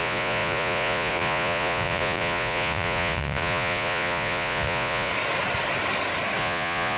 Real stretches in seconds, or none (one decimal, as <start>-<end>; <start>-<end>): 5.1-6.4

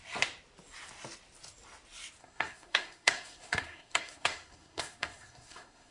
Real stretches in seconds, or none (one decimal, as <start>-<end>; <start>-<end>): 0.0-2.2

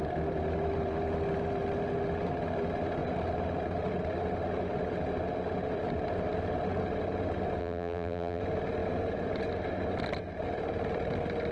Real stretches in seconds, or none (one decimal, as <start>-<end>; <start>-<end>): 0.0-7.6; 8.4-11.5

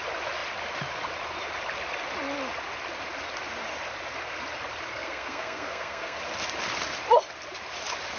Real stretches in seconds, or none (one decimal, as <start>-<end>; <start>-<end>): 0.0-4.9; 6.2-8.2

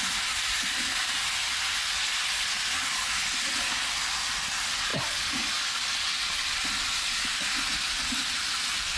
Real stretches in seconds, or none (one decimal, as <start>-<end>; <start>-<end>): 0.0-9.0

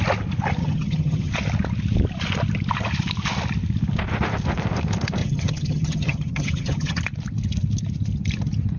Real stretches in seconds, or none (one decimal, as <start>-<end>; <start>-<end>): 0.0-0.6; 1.3-5.2; 7.0-8.8